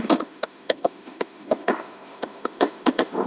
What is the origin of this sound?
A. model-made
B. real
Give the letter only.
A